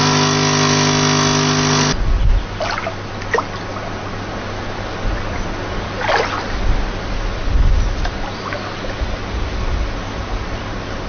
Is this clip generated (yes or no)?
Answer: no